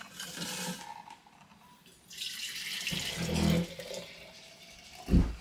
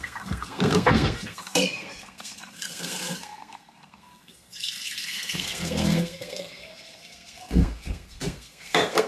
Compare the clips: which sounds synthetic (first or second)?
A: second